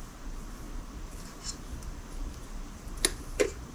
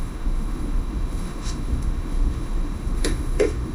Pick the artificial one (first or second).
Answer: second